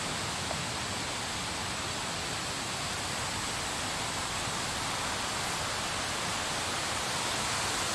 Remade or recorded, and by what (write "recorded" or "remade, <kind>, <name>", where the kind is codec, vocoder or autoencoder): recorded